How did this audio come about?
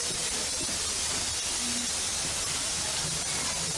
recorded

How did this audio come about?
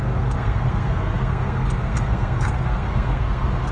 remade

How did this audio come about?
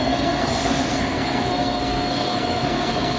remade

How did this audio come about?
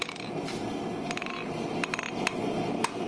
recorded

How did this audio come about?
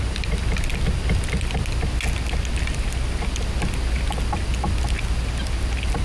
recorded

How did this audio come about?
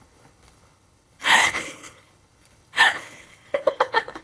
remade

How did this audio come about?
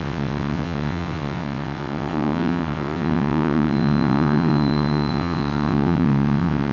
remade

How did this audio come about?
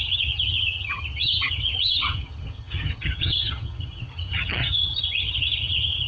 remade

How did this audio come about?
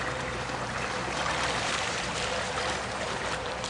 remade